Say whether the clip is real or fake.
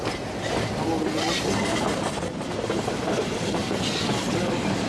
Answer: real